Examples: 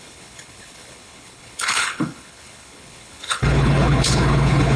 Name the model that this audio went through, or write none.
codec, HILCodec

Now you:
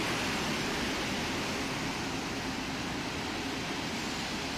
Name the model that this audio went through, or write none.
none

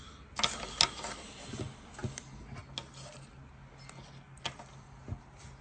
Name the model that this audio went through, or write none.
none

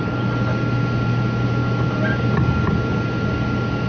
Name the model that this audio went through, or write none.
none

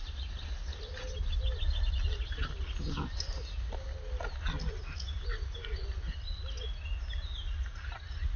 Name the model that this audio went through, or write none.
none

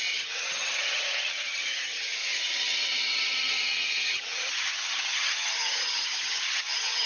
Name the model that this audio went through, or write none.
vocoder, HiFi-GAN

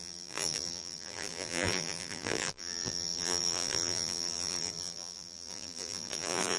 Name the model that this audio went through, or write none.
vocoder, BigVGAN v2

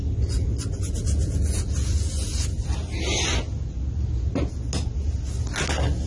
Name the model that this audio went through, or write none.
none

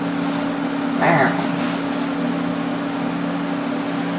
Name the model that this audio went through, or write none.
none